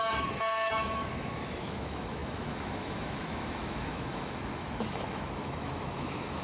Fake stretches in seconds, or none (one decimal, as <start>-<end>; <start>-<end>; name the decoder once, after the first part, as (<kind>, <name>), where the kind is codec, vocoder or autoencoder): 0.0-6.4 (autoencoder, DAC-VAE)